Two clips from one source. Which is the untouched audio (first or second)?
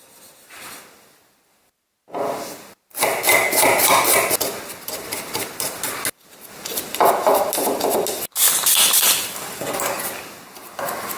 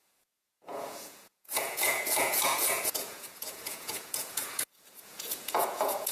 first